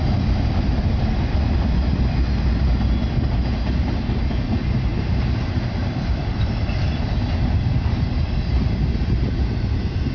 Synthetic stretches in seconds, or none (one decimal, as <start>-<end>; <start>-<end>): 0.0-0.7; 4.9-6.6